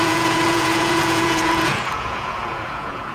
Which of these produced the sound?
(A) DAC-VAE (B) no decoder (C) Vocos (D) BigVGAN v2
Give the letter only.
C